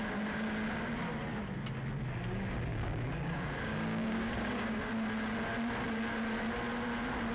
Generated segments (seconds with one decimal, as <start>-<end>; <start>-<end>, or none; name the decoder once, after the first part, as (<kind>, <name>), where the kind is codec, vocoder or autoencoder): 2.7-4.8 (codec, DAC)